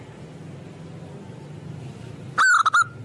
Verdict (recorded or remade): recorded